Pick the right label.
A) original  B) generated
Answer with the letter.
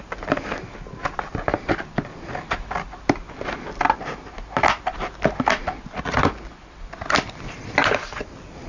A